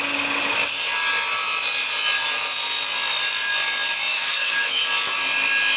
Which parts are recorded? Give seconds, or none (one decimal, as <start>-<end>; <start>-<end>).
0.0-4.1; 4.8-5.8